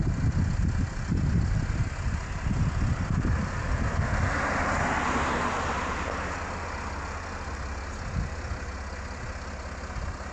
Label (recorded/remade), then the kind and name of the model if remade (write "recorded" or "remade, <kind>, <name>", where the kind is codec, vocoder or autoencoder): recorded